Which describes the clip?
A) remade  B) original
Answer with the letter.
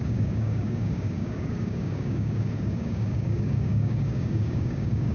A